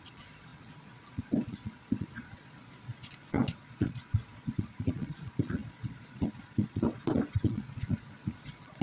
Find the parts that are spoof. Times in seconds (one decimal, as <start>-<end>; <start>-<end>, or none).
0.0-8.8